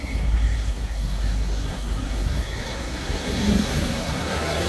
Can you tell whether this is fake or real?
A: fake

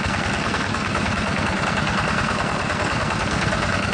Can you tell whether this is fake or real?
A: fake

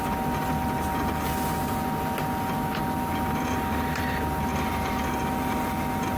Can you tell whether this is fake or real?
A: real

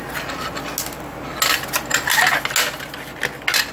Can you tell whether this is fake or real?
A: real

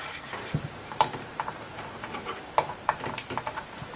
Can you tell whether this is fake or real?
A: fake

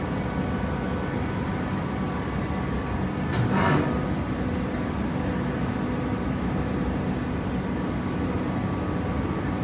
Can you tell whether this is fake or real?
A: real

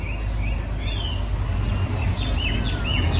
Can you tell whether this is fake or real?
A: real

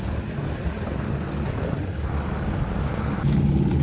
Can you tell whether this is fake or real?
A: real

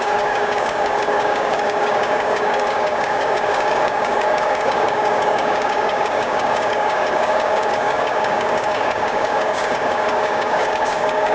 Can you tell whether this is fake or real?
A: fake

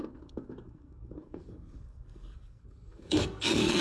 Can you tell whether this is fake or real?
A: fake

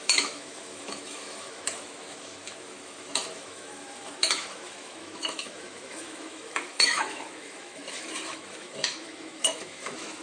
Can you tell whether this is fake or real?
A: fake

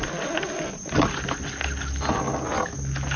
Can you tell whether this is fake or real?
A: real